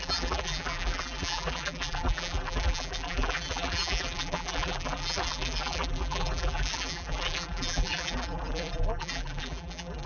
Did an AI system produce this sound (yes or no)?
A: yes